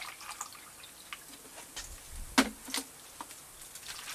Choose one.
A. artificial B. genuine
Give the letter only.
B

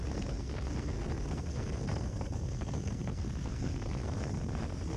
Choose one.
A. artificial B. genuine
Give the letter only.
A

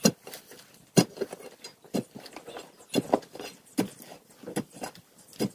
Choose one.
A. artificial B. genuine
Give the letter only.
B